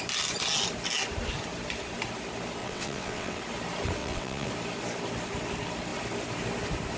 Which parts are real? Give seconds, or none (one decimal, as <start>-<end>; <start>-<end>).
0.0-2.6; 3.4-4.0; 4.5-7.0